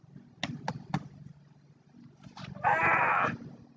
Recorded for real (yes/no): yes